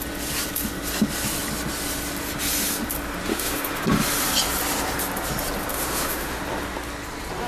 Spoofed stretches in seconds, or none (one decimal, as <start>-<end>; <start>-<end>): 3.3-3.8; 5.7-6.4